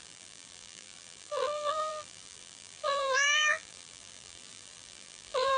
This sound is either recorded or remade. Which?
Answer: remade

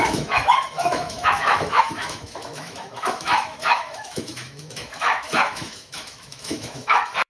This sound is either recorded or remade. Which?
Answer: remade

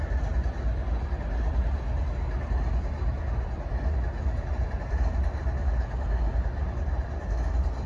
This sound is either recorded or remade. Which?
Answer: recorded